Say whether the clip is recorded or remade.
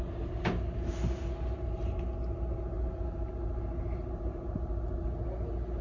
recorded